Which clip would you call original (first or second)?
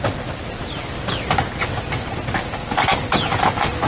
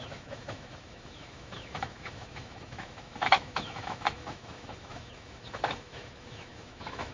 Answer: first